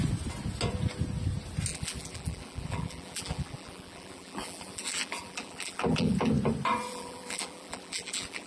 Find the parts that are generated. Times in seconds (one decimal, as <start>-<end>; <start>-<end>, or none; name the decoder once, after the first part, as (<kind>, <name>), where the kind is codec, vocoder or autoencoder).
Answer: 1.7-6.3 (vocoder, BigVGAN v2); 6.9-8.5